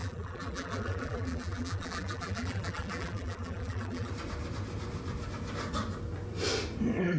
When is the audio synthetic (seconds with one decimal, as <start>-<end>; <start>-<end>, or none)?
0.0-4.1